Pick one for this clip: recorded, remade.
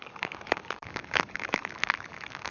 remade